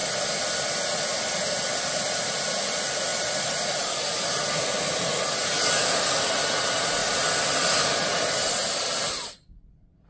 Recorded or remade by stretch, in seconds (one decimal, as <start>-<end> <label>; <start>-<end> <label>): 0.0-10.1 recorded